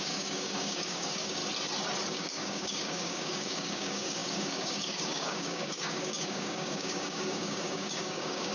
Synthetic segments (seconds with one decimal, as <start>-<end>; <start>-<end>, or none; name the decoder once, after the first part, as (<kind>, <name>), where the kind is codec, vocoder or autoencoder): 0.0-1.4 (codec, DAC); 2.1-8.5